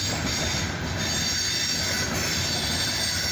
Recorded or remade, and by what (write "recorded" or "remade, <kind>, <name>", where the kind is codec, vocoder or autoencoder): recorded